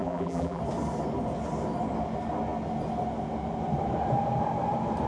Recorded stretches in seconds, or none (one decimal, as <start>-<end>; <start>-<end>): 0.6-5.1